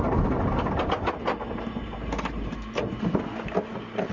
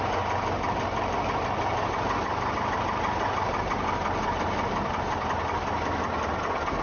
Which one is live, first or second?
second